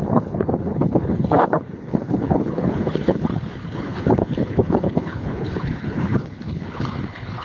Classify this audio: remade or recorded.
remade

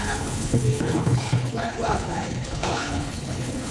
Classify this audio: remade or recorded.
remade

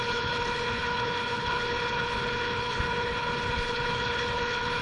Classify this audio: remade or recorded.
remade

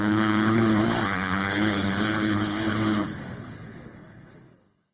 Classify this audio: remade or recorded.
remade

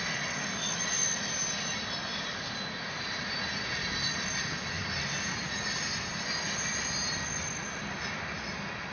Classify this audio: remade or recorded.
recorded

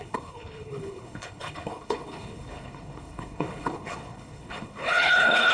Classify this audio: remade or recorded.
remade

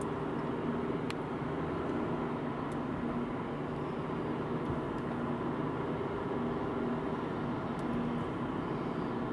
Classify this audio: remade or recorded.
recorded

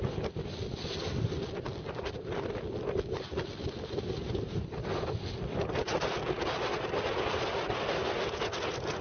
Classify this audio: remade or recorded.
recorded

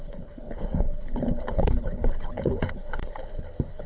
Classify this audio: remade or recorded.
remade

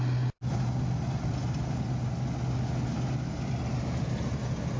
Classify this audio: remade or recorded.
recorded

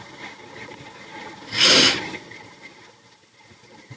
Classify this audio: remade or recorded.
recorded